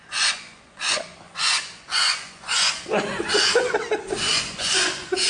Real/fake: fake